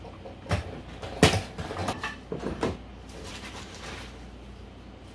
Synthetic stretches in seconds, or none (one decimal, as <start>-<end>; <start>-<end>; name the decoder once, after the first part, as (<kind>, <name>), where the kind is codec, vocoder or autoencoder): none